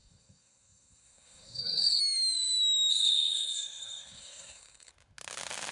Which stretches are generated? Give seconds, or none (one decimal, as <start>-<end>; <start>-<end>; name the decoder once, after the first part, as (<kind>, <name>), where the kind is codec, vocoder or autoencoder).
0.0-2.0 (codec, SNAC); 2.9-4.9